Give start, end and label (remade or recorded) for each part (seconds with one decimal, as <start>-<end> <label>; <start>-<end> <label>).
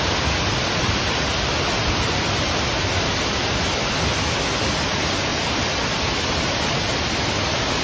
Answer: 0.0-7.8 recorded